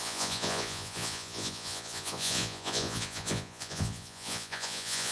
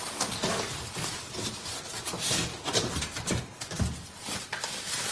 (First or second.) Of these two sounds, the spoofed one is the first